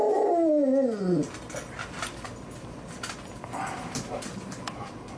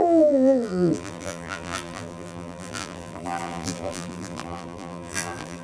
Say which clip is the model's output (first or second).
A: second